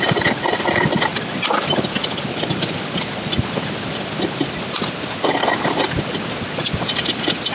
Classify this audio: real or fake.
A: real